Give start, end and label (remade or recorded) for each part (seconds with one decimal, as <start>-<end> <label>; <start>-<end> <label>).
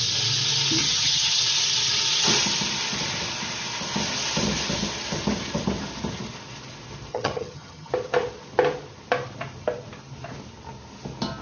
0.0-0.8 recorded; 0.8-1.4 remade; 1.4-7.1 recorded; 7.1-7.9 remade; 7.9-11.4 recorded